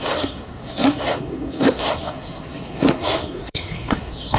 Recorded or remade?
remade